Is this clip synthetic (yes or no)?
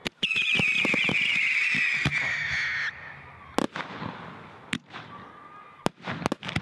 no